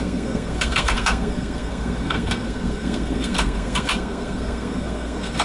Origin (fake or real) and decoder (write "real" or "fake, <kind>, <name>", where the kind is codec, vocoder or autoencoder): fake, codec, SNAC